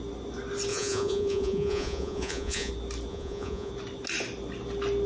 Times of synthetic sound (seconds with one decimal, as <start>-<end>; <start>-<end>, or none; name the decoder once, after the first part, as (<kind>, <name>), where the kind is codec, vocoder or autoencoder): 0.7-2.7 (vocoder, Vocos); 3.1-3.7